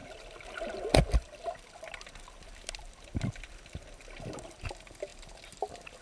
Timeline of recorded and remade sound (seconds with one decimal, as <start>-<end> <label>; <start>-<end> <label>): 0.0-3.6 remade; 3.6-5.1 recorded; 5.1-6.0 remade